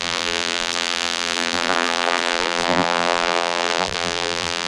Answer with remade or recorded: remade